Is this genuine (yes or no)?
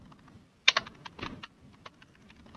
yes